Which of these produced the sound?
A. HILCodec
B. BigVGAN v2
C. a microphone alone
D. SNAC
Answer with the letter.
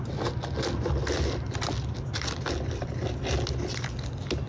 C